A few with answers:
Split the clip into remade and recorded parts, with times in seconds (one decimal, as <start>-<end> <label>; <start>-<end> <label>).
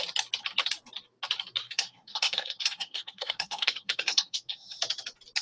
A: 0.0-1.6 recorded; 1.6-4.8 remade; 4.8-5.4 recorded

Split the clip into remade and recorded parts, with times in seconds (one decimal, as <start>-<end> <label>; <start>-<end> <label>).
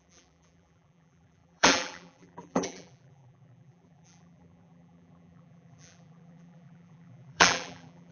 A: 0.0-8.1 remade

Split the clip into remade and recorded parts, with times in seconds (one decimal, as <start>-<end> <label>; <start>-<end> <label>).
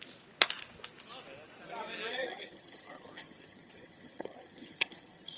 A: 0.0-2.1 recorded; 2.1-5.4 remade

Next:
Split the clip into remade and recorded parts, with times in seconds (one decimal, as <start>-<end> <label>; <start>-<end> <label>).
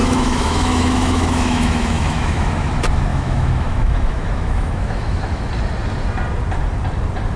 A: 0.0-2.7 remade; 2.7-3.1 recorded; 3.1-5.5 remade; 5.5-7.4 recorded